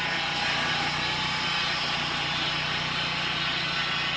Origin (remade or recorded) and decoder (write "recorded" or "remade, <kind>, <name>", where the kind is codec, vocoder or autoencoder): recorded